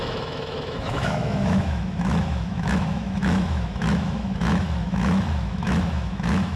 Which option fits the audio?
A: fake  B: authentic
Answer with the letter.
A